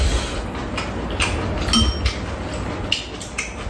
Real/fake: real